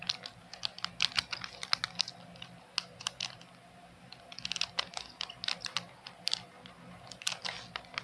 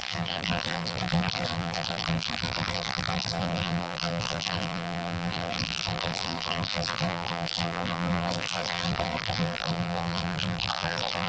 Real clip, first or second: first